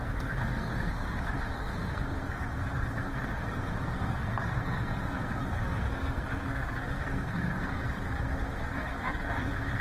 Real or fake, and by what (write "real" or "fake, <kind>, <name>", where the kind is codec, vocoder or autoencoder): fake, codec, SNAC